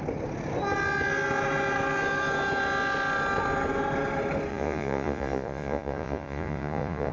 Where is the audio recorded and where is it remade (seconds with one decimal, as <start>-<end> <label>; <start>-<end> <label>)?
0.0-4.5 recorded; 4.5-7.1 remade